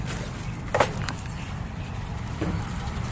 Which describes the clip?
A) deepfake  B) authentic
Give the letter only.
A